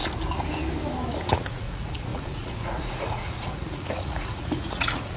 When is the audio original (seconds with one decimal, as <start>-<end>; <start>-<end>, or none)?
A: 0.0-1.1